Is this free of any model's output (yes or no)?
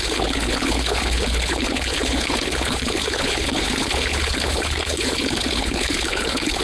no